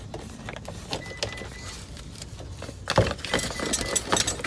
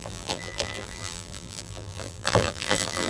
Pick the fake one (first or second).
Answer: second